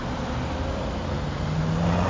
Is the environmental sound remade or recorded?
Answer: recorded